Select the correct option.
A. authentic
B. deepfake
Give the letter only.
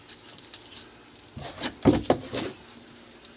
A